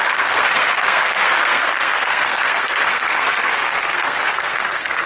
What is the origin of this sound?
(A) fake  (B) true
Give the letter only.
A